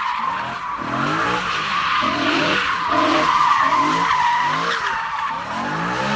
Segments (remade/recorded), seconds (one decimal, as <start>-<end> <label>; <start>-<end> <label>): 0.0-1.8 recorded; 1.8-3.6 remade; 3.6-6.2 recorded